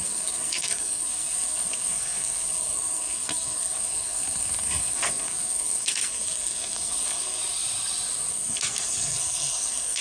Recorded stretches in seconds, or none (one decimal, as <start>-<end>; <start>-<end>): 7.4-8.3